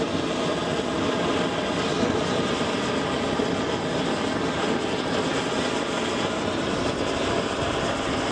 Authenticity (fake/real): real